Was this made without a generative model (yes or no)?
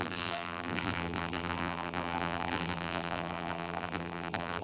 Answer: no